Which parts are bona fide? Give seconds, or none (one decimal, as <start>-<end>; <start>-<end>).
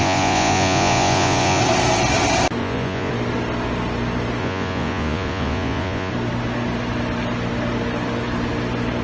1.6-2.6; 3.1-4.4; 6.1-9.0